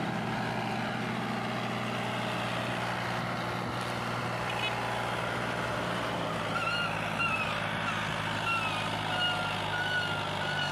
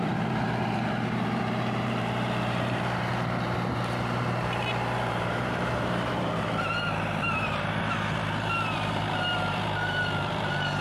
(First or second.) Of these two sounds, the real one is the first